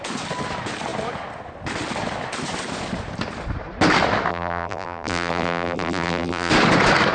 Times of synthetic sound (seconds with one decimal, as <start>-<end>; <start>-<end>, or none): 4.3-6.5